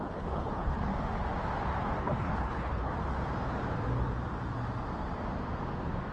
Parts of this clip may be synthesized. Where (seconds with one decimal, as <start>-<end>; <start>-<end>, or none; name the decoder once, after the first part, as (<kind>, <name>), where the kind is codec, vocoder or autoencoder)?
0.0-0.9 (codec, HILCodec); 2.0-2.9